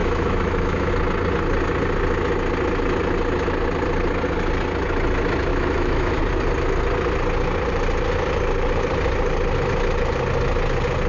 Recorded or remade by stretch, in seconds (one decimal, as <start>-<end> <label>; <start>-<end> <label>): 0.0-0.9 remade; 0.9-5.5 recorded; 5.5-6.2 remade; 6.2-11.1 recorded